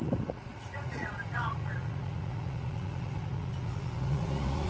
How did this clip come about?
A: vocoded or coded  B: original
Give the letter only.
A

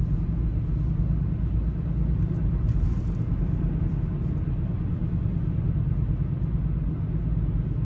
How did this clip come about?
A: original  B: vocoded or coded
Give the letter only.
A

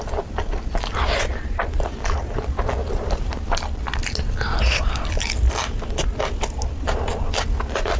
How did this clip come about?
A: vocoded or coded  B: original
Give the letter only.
B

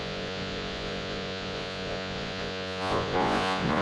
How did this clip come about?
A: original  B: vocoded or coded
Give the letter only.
B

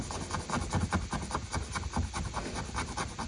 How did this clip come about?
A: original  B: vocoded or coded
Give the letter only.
A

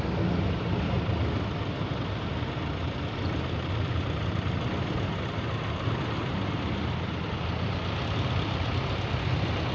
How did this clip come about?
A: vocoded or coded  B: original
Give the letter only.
B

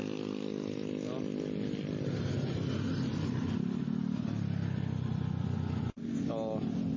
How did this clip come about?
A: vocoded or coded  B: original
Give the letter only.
B